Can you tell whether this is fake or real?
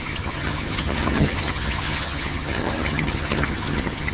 fake